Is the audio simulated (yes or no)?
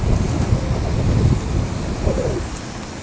no